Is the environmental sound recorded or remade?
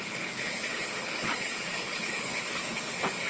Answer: remade